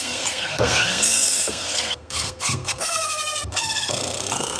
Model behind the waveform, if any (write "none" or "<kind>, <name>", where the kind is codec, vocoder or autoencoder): codec, SNAC